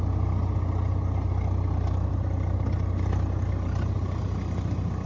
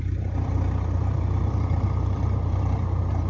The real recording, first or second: first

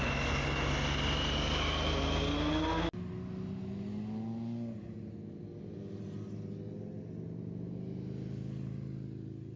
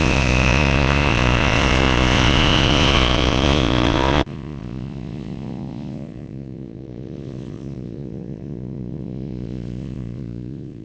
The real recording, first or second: first